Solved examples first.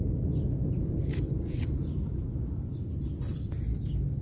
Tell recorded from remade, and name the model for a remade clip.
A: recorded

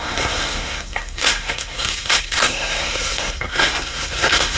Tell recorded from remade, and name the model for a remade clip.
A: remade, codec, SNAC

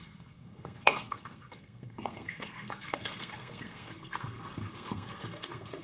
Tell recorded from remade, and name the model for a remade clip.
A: remade, codec, SNAC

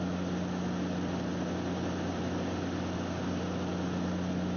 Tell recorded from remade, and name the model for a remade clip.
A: recorded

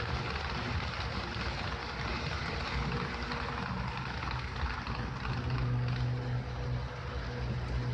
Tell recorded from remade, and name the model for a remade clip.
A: recorded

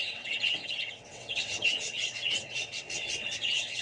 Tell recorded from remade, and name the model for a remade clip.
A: remade, vocoder, WaveNeXt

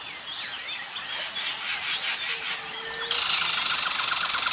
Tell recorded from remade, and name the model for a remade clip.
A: recorded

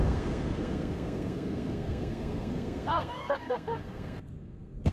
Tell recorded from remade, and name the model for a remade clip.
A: remade, codec, SNAC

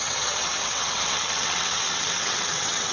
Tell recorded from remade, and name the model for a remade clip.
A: remade, vocoder, WaveNeXt